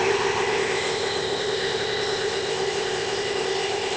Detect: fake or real fake